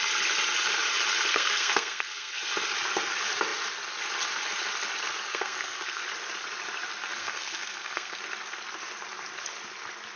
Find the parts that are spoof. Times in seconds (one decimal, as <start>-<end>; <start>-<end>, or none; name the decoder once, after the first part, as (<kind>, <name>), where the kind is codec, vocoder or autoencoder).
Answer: 1.3-2.5 (codec, SNAC); 5.3-6.0; 7.2-8.2